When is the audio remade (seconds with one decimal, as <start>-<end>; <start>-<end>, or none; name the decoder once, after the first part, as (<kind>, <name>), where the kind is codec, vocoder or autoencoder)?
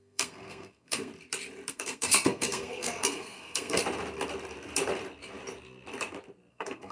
0.0-1.1 (codec, SNAC); 1.7-3.8; 6.5-6.9